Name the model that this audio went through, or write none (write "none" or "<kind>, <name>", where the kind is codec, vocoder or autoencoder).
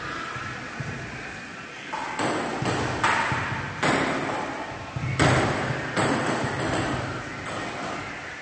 none